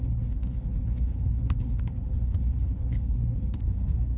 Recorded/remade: remade